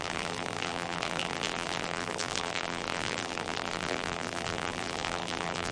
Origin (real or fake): fake